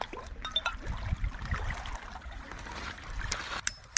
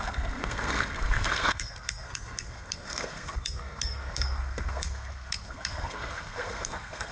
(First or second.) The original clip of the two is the first